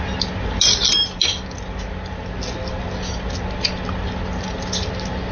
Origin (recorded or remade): recorded